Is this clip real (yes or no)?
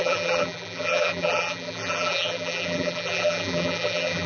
no